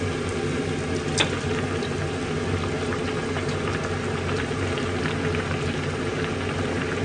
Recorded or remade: recorded